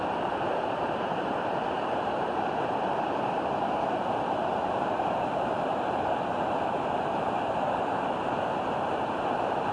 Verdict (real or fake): fake